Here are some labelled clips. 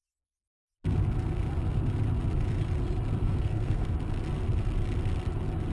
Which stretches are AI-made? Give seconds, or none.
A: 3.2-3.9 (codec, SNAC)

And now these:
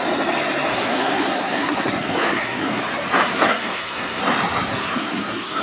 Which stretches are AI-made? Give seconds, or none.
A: 0.7-2.8 (codec, SNAC); 3.3-4.2; 4.7-5.6

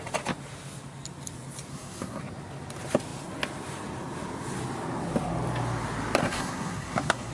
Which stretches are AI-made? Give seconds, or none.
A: 1.7-2.2 (codec, SNAC); 6.2-7.3

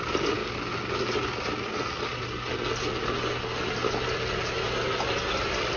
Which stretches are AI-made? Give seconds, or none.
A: none

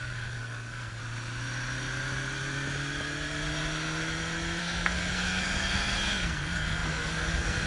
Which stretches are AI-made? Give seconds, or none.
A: 0.0-1.0 (codec, SNAC); 4.6-7.7